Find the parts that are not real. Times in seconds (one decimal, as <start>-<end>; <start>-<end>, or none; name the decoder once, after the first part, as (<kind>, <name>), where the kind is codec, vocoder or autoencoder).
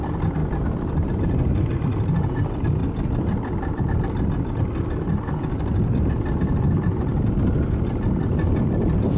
0.4-1.1 (vocoder, BigVGAN v2)